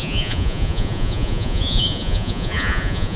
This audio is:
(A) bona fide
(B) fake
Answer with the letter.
B